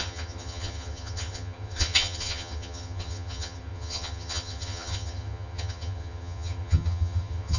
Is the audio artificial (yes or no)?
yes